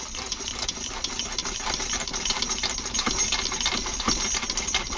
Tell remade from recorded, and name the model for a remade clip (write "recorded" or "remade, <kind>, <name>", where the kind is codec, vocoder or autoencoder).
recorded